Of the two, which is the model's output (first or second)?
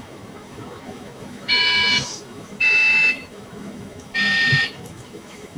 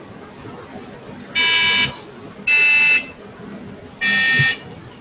first